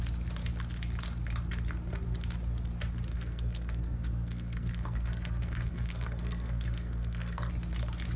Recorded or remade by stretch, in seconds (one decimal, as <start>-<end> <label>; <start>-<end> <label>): 0.0-3.1 recorded; 3.1-7.5 remade; 7.5-8.2 recorded